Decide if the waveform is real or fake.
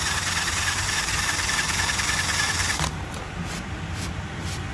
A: real